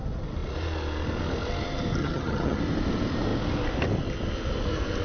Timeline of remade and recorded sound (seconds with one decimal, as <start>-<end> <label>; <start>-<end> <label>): 0.0-2.0 recorded; 2.0-2.6 remade; 2.6-5.0 recorded